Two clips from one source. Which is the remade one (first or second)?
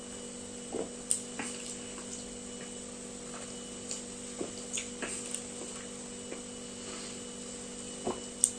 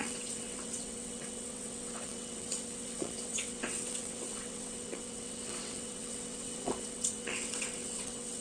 second